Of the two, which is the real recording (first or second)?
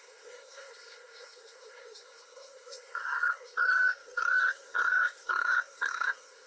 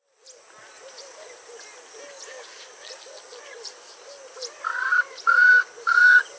second